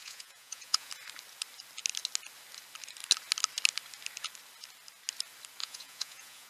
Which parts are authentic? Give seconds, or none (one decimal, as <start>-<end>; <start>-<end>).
0.9-5.6